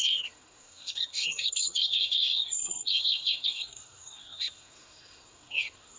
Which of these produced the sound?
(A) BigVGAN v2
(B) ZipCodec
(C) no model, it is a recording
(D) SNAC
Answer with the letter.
D